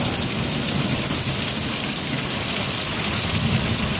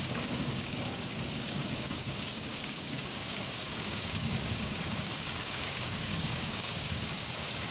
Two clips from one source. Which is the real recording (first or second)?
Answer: first